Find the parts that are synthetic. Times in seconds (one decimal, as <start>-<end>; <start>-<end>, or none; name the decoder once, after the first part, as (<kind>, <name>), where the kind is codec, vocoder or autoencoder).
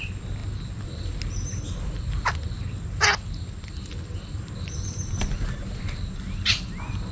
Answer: none